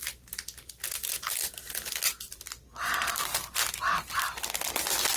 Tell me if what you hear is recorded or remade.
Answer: recorded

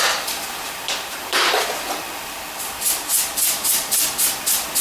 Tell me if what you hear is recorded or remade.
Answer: remade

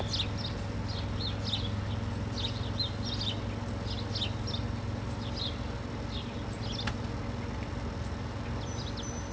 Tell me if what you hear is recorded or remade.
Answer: recorded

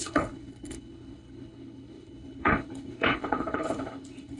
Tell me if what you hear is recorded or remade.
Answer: remade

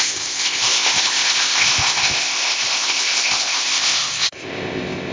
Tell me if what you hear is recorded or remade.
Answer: remade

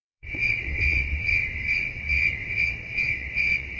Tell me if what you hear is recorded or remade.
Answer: remade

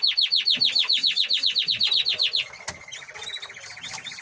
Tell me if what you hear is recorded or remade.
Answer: recorded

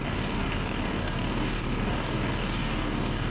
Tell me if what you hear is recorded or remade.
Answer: remade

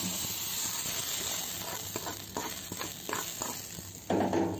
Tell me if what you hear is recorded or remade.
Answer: recorded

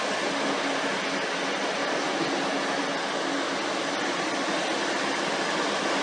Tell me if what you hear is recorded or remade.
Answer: recorded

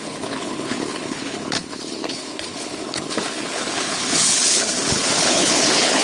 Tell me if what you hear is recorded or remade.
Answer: remade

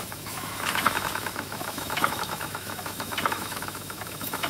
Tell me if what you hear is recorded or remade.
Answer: remade